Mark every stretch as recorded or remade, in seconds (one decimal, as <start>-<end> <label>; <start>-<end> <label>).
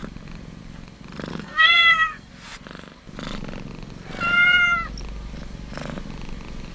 0.0-1.3 recorded; 1.3-2.3 remade; 2.3-6.7 recorded